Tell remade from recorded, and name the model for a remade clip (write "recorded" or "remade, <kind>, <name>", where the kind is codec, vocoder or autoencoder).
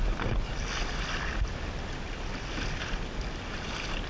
recorded